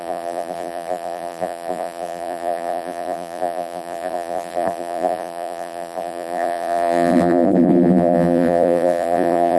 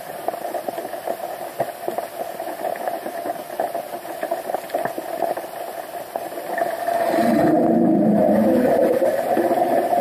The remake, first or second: first